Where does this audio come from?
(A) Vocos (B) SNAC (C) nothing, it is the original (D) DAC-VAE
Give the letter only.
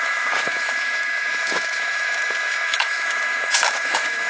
D